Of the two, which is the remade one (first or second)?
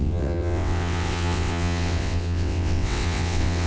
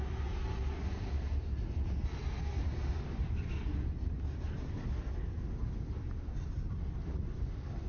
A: first